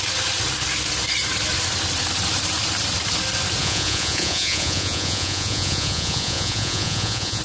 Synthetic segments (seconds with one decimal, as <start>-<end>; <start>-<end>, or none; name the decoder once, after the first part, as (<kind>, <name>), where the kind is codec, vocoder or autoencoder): 3.6-7.4 (vocoder, Vocos)